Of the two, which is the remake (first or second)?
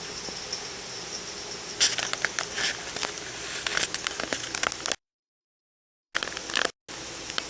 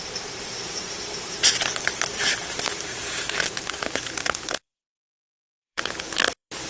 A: second